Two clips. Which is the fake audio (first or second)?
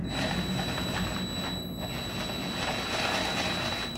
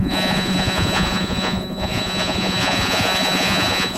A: second